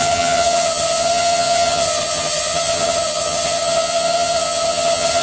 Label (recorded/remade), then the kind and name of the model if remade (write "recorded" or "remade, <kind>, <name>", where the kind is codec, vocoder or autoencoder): remade, vocoder, HiFi-GAN